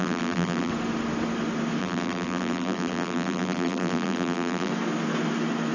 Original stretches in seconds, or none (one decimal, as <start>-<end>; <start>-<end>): 0.7-1.8; 4.7-5.7